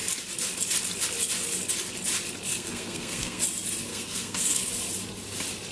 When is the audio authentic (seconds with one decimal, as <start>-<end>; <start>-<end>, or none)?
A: 0.0-2.5; 3.4-3.9; 4.7-5.7